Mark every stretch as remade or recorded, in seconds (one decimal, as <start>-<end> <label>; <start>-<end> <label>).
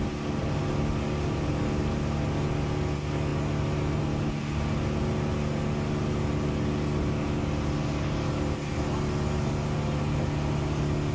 0.0-11.1 recorded